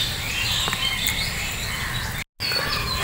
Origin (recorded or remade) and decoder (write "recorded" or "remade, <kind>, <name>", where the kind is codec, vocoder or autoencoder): recorded